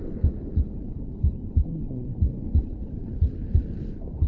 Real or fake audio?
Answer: fake